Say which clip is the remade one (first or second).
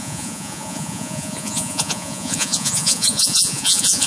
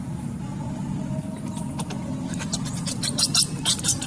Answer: first